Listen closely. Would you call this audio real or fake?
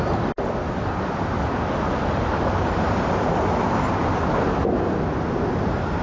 real